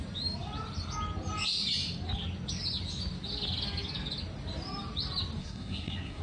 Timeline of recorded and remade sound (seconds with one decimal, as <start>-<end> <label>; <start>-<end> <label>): 0.0-5.4 recorded; 5.4-6.2 remade

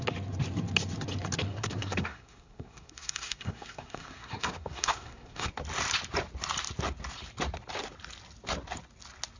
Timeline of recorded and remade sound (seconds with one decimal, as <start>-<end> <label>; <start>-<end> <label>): 0.0-1.5 recorded; 1.5-5.5 remade; 5.5-9.4 recorded

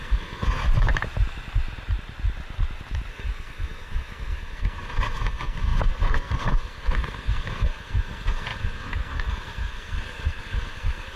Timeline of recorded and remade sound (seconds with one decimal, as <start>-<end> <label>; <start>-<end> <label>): 0.0-0.6 remade; 0.6-3.1 recorded; 3.1-11.2 remade